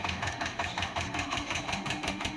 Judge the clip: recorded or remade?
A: remade